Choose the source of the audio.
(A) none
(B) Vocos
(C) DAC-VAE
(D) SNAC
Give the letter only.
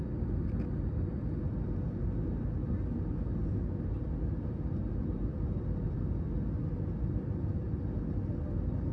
A